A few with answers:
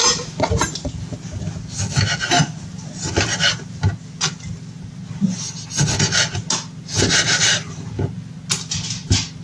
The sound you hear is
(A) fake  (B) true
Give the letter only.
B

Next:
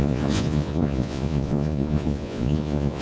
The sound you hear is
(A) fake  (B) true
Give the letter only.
A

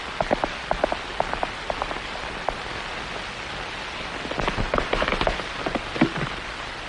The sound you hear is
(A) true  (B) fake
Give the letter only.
A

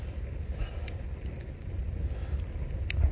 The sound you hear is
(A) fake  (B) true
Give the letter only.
B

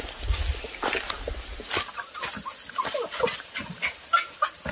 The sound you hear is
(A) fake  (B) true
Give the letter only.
B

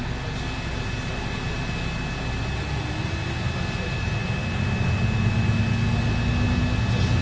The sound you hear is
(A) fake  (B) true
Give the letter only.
B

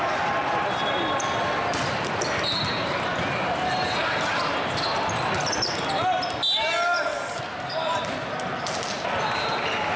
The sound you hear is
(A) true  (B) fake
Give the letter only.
A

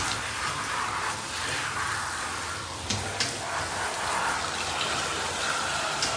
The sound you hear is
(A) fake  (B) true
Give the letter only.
B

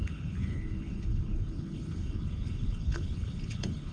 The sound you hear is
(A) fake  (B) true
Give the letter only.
A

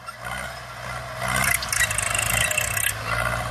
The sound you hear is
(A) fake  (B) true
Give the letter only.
B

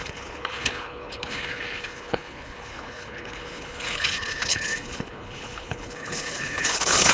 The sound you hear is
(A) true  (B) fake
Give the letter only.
B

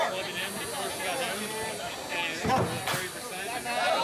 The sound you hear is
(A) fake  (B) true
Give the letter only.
B